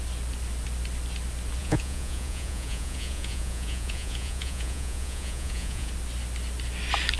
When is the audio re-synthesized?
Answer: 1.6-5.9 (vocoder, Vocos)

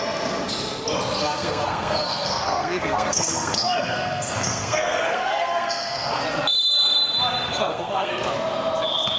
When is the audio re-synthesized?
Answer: 1.2-6.2 (codec, SNAC); 7.5-8.1

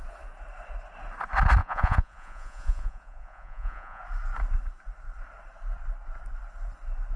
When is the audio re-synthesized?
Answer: 1.6-4.0 (vocoder, Vocos)

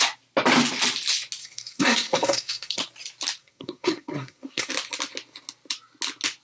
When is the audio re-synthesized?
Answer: 1.4-2.8 (codec, SNAC); 3.4-4.7